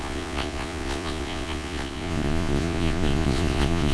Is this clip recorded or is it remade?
remade